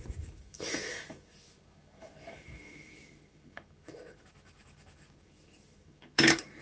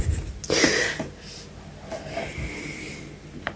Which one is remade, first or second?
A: first